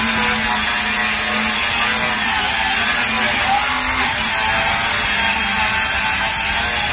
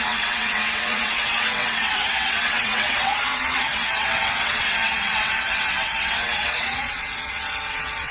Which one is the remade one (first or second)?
second